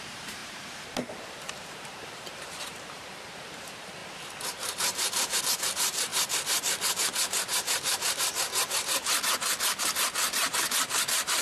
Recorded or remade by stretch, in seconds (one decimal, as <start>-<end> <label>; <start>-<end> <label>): 0.0-6.1 remade; 6.1-9.8 recorded; 9.8-11.4 remade